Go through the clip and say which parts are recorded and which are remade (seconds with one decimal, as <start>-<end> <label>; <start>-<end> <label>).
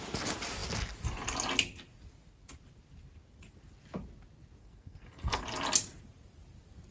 0.0-4.6 recorded; 4.6-5.4 remade; 5.4-6.9 recorded